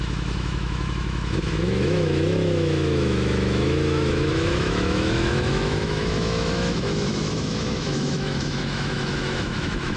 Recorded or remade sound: remade